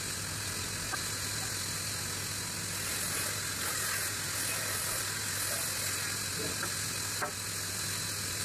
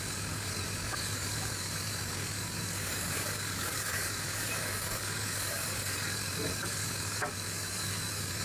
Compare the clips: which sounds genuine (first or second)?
first